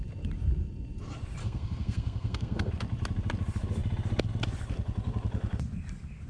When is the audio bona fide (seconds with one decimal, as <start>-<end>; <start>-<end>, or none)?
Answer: 0.0-1.4; 2.7-6.3